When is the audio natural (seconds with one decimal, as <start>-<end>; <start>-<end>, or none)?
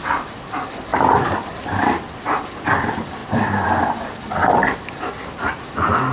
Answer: 0.0-0.9; 2.1-6.1